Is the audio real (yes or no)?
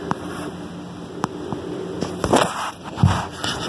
yes